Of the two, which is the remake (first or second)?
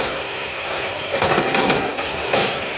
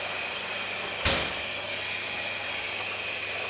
first